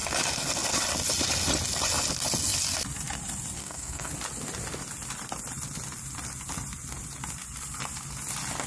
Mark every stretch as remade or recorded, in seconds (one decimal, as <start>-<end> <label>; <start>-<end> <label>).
0.0-3.6 recorded; 3.6-4.1 remade; 4.1-8.7 recorded